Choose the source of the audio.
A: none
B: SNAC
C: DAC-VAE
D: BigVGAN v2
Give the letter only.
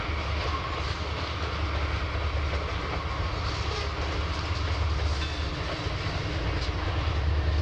A